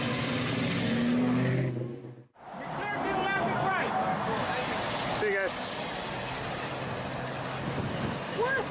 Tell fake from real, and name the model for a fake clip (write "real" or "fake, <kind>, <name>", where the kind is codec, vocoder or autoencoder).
real